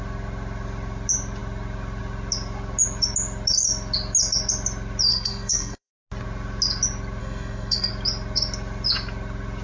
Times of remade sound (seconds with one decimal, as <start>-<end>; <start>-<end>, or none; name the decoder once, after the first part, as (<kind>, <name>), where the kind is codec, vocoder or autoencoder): 5.1-5.9 (codec, SNAC); 7.2-7.9